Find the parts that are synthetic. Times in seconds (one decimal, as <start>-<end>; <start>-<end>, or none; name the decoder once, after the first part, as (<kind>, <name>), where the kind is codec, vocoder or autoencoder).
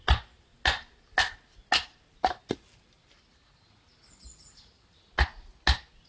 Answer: none